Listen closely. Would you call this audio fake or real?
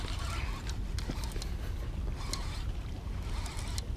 real